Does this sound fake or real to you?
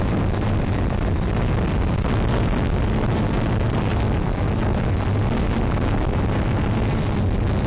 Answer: real